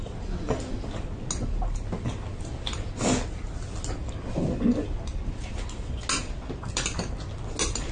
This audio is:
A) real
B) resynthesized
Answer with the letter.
A